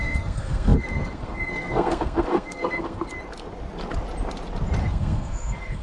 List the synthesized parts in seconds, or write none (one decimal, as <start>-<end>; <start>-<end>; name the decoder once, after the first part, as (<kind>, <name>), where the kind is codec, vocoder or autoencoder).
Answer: 0.0-3.1 (codec, SNAC); 4.8-5.8

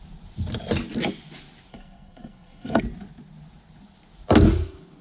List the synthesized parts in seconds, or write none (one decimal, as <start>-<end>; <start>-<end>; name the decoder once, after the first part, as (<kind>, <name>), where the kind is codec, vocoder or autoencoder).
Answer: 1.7-2.8 (codec, SNAC)

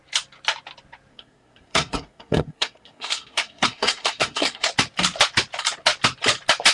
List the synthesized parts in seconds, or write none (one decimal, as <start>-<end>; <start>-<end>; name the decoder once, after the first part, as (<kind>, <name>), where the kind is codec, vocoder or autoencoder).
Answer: 1.1-4.7 (codec, SNAC)

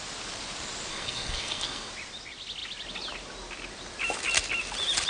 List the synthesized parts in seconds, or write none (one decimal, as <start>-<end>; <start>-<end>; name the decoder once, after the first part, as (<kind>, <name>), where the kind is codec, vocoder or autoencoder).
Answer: 0.9-1.9 (codec, SNAC)